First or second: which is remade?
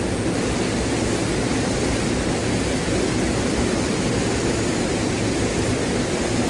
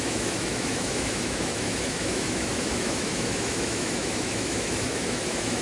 second